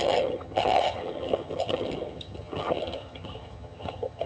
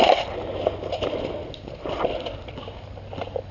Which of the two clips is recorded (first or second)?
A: second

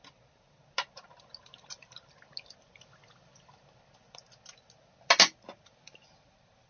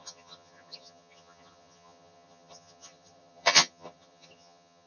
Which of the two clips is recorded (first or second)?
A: first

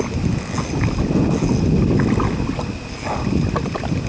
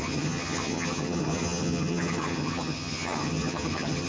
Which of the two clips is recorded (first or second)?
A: first